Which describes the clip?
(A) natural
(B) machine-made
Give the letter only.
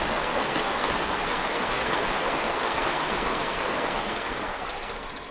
B